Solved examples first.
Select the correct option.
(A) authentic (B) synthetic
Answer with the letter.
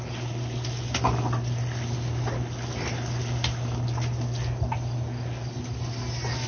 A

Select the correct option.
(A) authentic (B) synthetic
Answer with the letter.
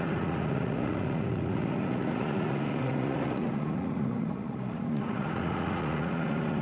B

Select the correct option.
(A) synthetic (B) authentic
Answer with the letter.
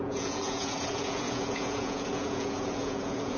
A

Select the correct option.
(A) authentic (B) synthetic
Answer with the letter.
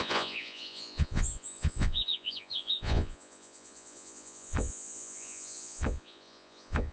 B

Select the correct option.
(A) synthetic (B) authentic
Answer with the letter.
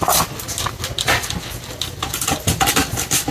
B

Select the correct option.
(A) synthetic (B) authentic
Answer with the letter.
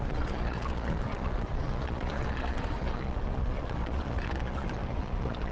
A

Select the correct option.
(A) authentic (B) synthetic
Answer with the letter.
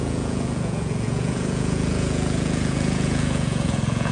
B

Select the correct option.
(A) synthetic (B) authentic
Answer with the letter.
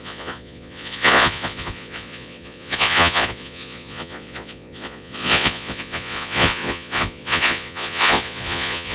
A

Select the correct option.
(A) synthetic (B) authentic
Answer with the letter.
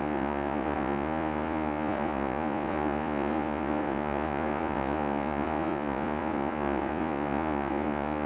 A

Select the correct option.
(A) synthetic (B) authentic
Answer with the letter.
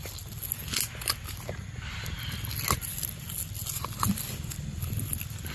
B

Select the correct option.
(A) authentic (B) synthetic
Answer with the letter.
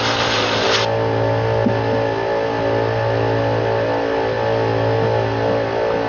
A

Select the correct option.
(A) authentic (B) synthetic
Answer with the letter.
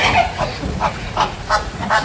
B